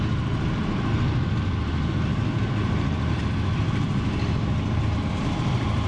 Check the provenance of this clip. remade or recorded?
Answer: remade